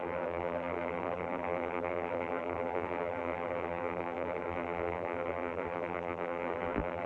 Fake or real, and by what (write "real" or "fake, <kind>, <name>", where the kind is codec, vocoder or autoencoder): fake, vocoder, BigVGAN v2